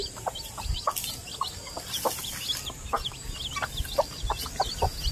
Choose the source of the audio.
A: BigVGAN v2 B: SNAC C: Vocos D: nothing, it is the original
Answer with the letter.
D